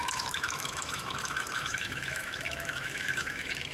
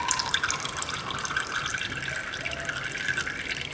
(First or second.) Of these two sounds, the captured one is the second